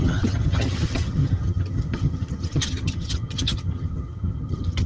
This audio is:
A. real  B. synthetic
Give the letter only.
B